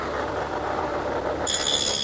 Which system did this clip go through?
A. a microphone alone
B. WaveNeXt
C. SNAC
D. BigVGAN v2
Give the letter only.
A